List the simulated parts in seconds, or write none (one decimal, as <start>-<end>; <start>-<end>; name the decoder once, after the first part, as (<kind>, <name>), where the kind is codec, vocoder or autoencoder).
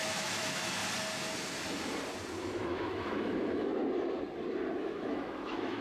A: 0.0-0.8 (autoencoder, DAC-VAE); 2.4-3.7; 4.8-5.8